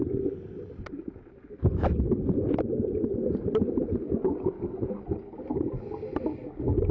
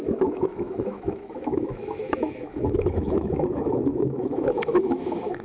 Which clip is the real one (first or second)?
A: first